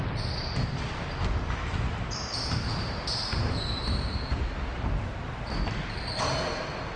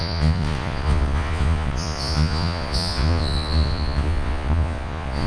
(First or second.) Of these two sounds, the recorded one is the first